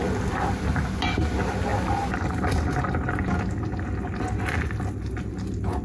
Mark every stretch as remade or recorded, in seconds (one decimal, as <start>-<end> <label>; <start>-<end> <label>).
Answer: 0.0-5.8 recorded

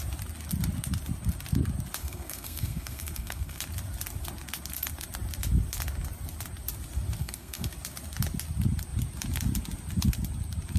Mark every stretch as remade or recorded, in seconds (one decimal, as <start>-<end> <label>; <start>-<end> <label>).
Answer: 0.0-2.0 recorded; 2.0-3.6 remade; 3.6-7.2 recorded; 7.2-7.7 remade; 7.7-10.8 recorded

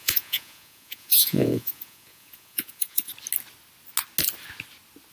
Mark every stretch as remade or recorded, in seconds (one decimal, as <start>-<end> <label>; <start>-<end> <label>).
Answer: 0.0-3.1 remade; 3.1-5.1 recorded

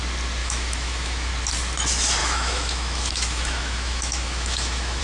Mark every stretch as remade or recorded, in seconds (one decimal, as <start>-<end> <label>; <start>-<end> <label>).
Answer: 0.0-0.4 recorded; 0.4-1.3 remade; 1.3-2.2 recorded; 2.2-5.0 remade

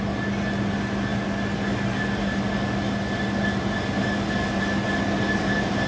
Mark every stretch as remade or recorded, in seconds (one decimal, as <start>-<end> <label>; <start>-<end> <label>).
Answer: 0.0-5.9 recorded